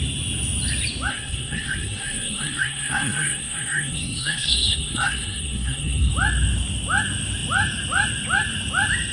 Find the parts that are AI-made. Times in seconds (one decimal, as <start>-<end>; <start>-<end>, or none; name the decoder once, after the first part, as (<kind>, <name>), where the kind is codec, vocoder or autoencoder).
1.1-6.1 (codec, SNAC)